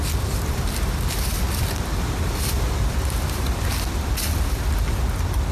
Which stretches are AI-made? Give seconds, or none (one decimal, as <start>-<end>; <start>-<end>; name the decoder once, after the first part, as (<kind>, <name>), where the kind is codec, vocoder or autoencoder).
1.3-4.6 (vocoder, BigVGAN v2)